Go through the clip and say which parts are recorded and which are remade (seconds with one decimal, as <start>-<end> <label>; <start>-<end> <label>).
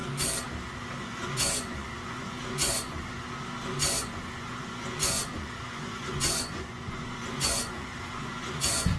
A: 0.0-1.0 recorded; 1.0-3.2 remade; 3.2-3.9 recorded; 3.9-9.0 remade